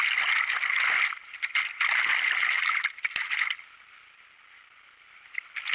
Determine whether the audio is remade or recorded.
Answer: recorded